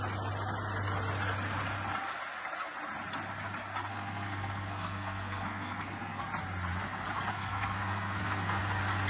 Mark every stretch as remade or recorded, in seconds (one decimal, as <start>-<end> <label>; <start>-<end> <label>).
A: 0.0-3.9 recorded; 3.9-6.2 remade; 6.2-7.3 recorded; 7.3-8.6 remade; 8.6-9.1 recorded